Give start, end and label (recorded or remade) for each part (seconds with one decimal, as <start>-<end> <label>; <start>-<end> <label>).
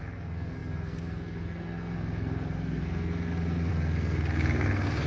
0.0-5.1 remade